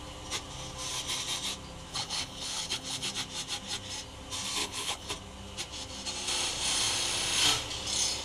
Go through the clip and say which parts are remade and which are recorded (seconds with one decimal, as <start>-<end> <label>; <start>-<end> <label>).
0.0-1.9 recorded; 1.9-3.1 remade; 3.1-4.6 recorded; 4.6-5.1 remade; 5.1-8.2 recorded